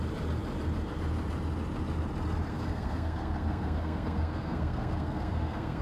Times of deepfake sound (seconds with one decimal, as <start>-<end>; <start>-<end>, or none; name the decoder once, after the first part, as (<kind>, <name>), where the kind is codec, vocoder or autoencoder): 2.5-5.8 (codec, SNAC)